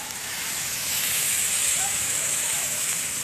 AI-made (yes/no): yes